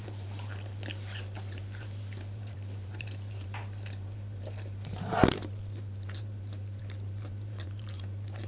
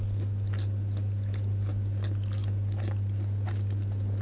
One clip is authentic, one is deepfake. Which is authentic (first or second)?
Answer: second